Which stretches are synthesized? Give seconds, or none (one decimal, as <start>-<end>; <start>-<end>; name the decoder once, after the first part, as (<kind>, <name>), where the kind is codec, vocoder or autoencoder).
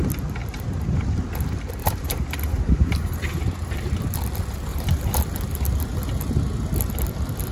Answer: 0.4-1.0 (vocoder, BigVGAN v2); 1.8-4.2; 4.7-5.2